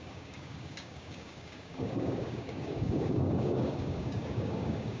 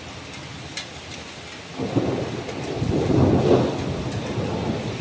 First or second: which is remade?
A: first